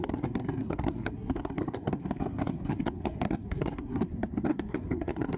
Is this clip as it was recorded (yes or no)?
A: no